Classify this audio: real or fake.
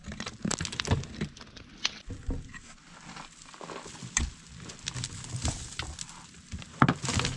real